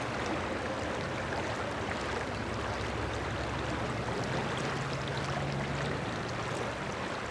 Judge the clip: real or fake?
real